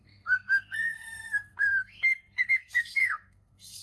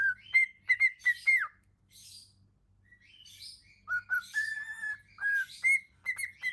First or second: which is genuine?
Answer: second